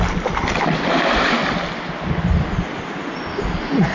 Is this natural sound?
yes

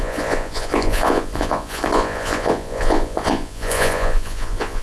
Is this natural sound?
no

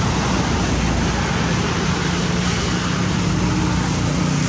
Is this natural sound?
yes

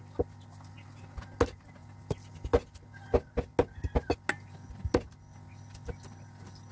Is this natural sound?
yes